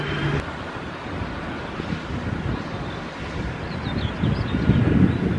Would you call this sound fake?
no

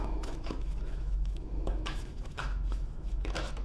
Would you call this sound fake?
yes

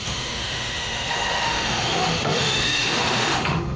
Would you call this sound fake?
yes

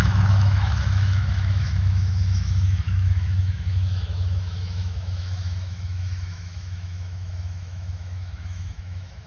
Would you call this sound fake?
yes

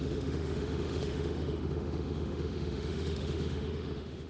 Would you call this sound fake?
yes